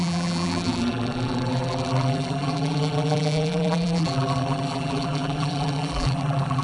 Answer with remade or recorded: remade